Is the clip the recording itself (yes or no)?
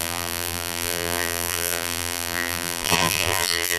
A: no